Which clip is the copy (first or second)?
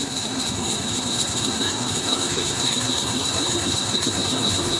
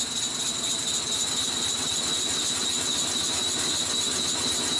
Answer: first